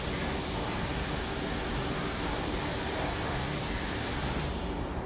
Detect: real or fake real